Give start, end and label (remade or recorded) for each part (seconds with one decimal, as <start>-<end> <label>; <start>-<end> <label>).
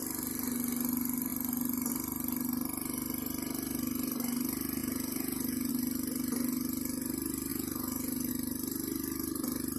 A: 0.0-4.8 recorded; 4.8-5.7 remade; 5.7-7.5 recorded; 7.5-8.3 remade; 8.3-9.8 recorded